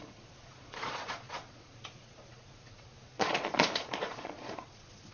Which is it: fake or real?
fake